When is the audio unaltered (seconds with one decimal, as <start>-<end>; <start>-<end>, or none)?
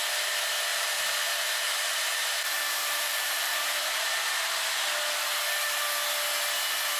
0.0-0.7; 4.1-7.0